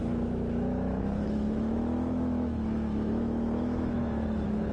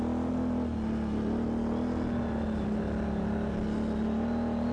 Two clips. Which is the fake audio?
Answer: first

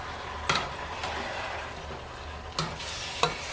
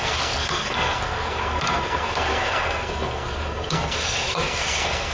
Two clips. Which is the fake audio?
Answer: second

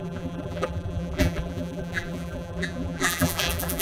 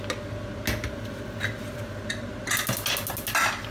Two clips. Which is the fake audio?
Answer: first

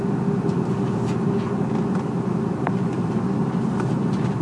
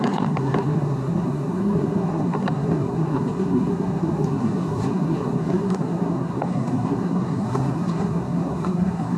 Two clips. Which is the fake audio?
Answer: second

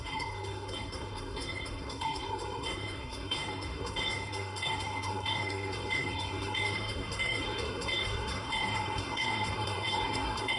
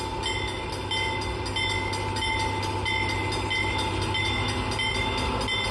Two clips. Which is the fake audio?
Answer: first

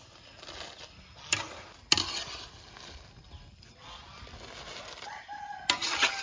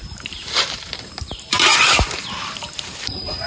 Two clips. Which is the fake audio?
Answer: second